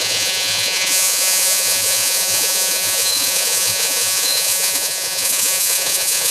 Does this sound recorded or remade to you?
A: remade